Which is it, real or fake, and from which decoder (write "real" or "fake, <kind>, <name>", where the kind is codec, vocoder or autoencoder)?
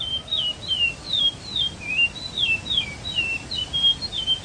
real